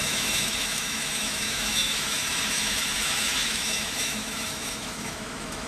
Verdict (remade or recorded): remade